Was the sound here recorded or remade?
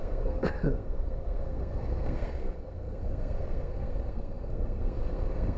remade